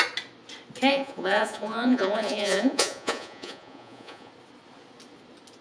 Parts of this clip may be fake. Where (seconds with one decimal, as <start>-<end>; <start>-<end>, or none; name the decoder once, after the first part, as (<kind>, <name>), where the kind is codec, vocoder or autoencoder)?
0.9-4.3 (vocoder, Vocos)